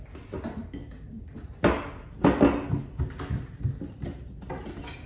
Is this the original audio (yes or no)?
yes